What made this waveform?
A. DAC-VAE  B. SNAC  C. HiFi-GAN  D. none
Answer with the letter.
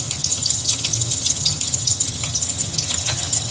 C